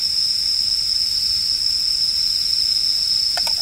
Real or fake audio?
real